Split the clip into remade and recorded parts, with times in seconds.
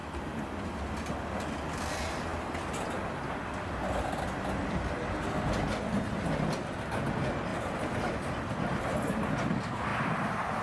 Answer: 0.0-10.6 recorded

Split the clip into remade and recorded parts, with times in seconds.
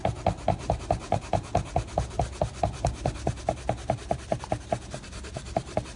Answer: 0.0-1.5 remade; 1.5-3.4 recorded; 3.4-6.0 remade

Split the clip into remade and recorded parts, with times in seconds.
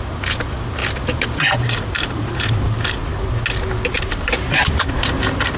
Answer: 0.0-0.8 remade; 0.8-1.5 recorded; 1.5-3.1 remade; 3.1-3.9 recorded; 3.9-5.6 remade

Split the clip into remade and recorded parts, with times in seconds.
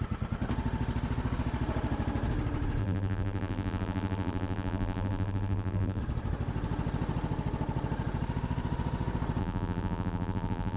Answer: 0.0-2.8 recorded; 2.8-6.0 remade; 6.0-9.4 recorded; 9.4-10.8 remade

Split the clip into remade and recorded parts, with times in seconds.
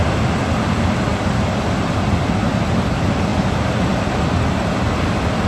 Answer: 0.0-5.5 recorded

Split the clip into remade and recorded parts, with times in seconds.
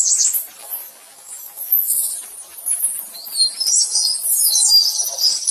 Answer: 0.0-0.6 recorded; 0.6-2.1 remade; 2.1-5.5 recorded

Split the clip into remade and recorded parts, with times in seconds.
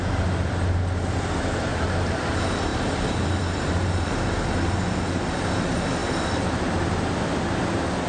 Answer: 0.0-1.7 recorded; 1.7-2.2 remade; 2.2-2.7 recorded; 2.7-4.2 remade; 4.2-6.0 recorded; 6.0-6.7 remade; 6.7-8.1 recorded